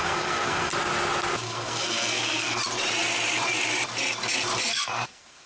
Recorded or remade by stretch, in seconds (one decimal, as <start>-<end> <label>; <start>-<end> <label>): 0.0-0.7 remade; 0.7-1.4 recorded; 1.4-2.6 remade; 2.6-4.7 recorded; 4.7-5.5 remade